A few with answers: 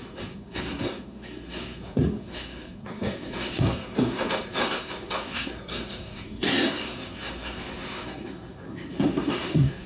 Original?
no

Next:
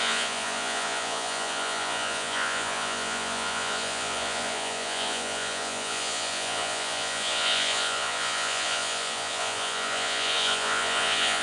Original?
no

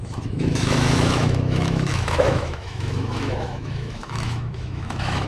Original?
no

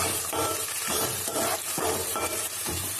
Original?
no